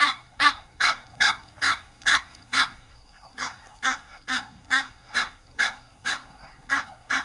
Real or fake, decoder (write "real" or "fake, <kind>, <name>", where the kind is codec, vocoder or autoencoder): fake, codec, SNAC